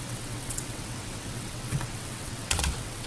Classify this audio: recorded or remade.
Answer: remade